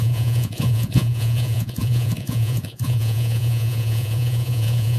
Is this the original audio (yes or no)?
no